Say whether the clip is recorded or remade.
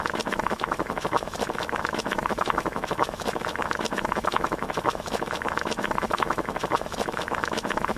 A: remade